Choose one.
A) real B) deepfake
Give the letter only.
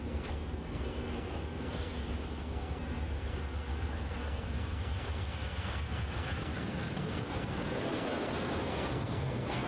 B